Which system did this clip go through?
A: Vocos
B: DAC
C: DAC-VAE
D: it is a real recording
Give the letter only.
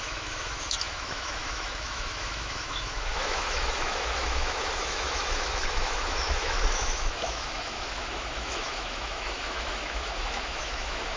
C